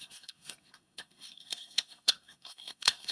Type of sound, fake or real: fake